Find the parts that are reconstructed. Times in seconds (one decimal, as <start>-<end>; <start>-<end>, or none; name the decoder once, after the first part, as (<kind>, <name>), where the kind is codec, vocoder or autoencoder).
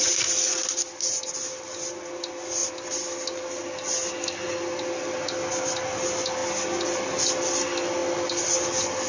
none